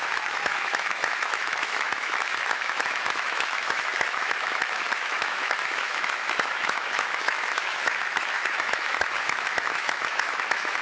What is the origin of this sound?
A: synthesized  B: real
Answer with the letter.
A